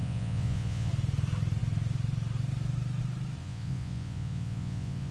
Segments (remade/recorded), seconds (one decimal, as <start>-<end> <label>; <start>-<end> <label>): 0.0-0.9 remade; 0.9-3.4 recorded; 3.4-5.1 remade